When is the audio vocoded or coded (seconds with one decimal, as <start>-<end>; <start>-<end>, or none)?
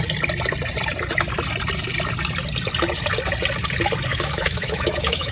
4.1-5.3